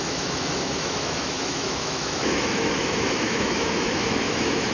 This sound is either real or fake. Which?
fake